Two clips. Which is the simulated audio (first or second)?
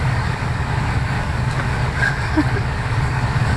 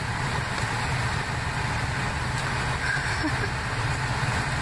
first